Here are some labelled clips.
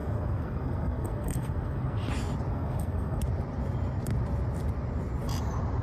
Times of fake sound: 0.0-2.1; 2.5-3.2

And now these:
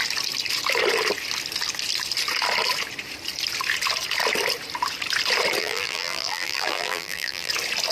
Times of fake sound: 5.6-7.5